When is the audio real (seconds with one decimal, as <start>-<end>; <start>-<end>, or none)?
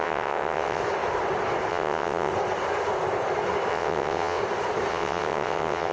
0.8-1.7; 2.3-3.7; 4.4-4.9